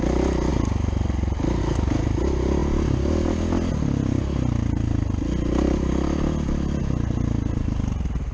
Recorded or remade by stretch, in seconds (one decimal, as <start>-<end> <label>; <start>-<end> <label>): 0.0-8.3 recorded